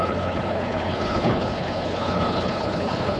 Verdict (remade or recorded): remade